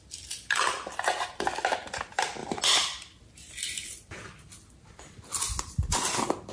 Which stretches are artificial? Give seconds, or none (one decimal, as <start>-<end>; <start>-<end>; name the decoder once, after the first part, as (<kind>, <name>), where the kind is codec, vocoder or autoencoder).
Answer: none